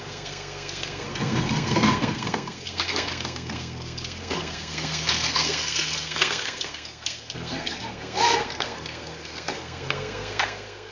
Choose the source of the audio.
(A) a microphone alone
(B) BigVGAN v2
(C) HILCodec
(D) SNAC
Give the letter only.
D